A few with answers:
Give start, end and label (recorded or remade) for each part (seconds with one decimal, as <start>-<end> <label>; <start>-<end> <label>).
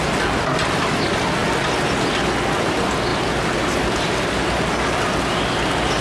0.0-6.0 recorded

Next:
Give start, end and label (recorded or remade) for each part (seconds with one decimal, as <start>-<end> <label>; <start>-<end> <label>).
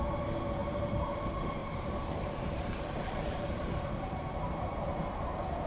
0.0-0.6 recorded; 0.6-1.2 remade; 1.2-1.6 recorded; 1.6-5.0 remade; 5.0-5.7 recorded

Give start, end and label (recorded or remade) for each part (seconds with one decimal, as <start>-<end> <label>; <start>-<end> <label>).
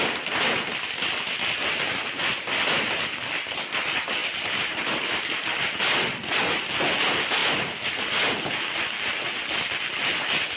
0.0-4.2 recorded; 4.2-5.3 remade; 5.3-10.6 recorded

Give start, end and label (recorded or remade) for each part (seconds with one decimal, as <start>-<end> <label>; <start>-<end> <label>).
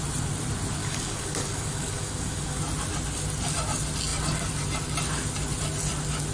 0.0-0.8 recorded; 0.8-2.6 remade; 2.6-6.3 recorded